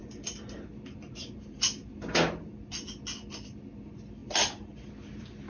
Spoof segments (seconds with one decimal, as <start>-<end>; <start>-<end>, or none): none